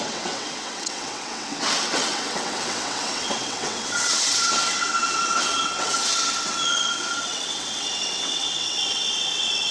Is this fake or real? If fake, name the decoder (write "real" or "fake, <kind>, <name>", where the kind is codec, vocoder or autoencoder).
fake, vocoder, WaveNeXt